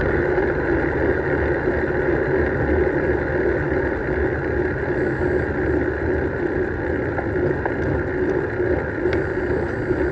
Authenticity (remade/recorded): recorded